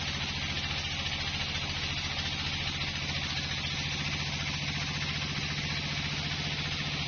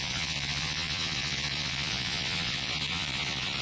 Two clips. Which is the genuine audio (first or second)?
first